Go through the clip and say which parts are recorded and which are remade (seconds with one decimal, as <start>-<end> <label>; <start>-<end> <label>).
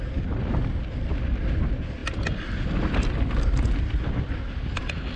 0.0-5.2 recorded